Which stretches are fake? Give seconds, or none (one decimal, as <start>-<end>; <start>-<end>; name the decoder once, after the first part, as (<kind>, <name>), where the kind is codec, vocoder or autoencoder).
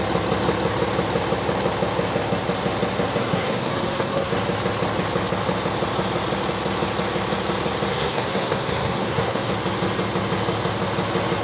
3.2-4.3 (codec, SNAC); 7.9-9.5